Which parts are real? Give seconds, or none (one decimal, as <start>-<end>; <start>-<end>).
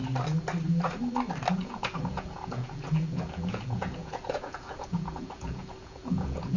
0.0-1.5